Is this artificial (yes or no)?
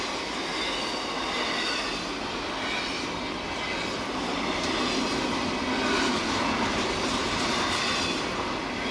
no